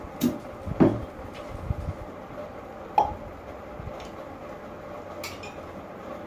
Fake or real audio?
real